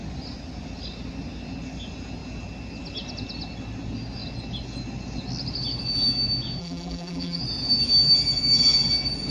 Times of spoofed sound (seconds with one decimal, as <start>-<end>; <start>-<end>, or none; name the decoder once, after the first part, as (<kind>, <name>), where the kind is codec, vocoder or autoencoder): 6.6-7.4 (vocoder, BigVGAN v2)